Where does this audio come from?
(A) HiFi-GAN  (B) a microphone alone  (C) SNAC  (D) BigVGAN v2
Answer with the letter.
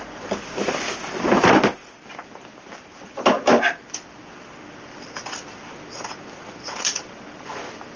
B